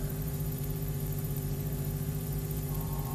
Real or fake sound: fake